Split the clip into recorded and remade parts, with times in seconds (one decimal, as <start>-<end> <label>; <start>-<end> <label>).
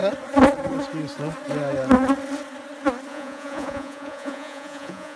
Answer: 0.0-3.1 recorded; 3.1-5.2 remade